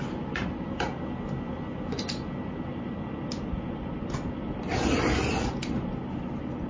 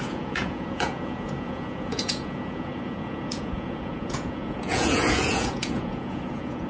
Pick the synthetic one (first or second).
second